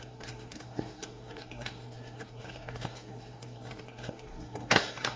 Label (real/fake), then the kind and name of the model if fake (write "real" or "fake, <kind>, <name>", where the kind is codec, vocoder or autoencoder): fake, codec, SNAC